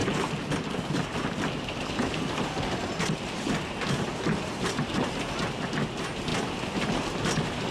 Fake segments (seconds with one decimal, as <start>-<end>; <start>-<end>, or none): none

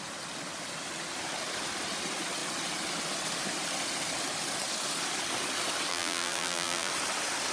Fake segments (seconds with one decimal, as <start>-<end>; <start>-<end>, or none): 5.9-6.9

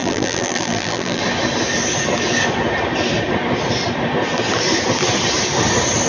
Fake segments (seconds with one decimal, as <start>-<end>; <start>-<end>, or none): 0.0-1.2

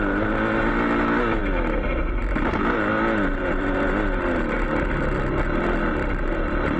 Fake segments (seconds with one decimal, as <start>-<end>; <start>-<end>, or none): none

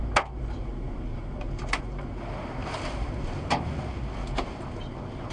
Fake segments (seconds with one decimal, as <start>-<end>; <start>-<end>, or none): 1.1-2.1; 2.6-3.8

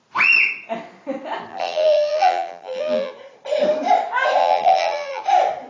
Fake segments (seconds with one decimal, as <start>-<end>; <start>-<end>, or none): 1.5-3.1; 4.4-5.2

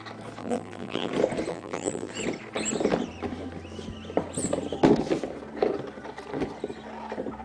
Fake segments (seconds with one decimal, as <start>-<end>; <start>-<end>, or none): 0.4-1.1; 1.5-2.1

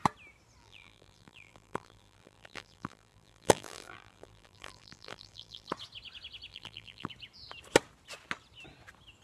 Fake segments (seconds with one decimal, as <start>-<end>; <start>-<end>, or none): 0.6-5.7; 6.5-7.1